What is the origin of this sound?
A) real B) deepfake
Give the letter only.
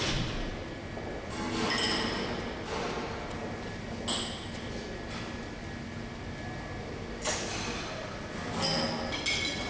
A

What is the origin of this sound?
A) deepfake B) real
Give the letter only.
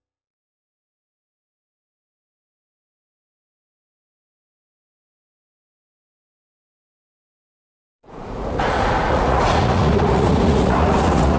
A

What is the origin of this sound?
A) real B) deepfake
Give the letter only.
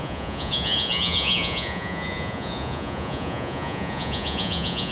B